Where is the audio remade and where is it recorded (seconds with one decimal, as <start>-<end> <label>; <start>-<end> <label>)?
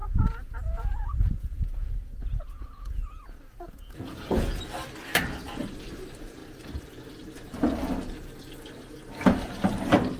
0.0-4.6 remade; 4.6-10.2 recorded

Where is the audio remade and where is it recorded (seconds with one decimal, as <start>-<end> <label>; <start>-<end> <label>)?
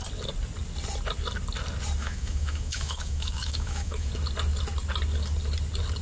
0.0-2.0 recorded; 2.0-4.1 remade; 4.1-6.0 recorded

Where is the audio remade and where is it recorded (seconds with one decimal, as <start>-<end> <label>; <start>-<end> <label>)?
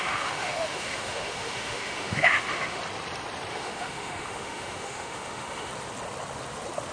0.0-2.8 remade; 2.8-3.5 recorded; 3.5-5.7 remade; 5.7-6.9 recorded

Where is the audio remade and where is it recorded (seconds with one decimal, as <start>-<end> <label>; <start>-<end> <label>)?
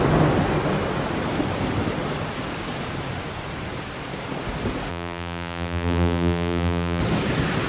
0.0-4.9 recorded; 4.9-7.0 remade; 7.0-7.7 recorded